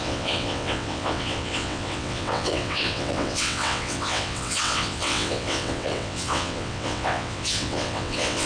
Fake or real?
fake